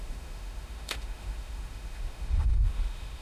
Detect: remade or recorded remade